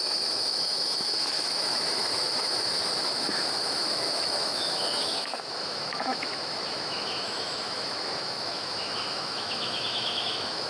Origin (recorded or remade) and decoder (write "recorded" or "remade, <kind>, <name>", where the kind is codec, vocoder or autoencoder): remade, autoencoder, DAC-VAE